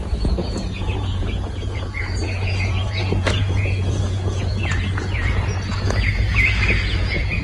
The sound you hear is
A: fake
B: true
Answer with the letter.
A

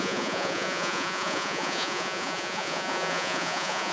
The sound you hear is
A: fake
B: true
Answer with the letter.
A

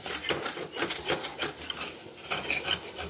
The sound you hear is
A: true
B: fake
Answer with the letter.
A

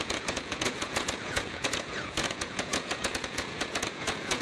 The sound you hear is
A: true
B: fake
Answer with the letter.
B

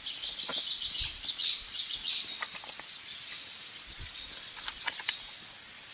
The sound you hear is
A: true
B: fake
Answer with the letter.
A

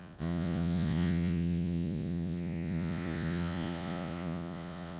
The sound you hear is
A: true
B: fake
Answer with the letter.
B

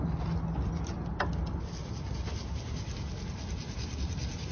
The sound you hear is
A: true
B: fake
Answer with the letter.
A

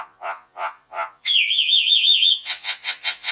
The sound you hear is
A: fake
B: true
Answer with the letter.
A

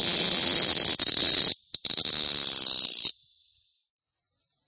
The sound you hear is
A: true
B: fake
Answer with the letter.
A